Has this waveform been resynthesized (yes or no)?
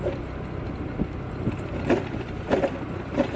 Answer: no